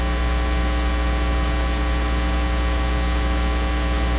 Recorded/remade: recorded